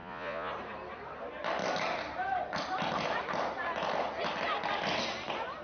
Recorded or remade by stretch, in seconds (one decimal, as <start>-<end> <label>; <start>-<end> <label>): 0.0-0.5 remade; 0.5-5.6 recorded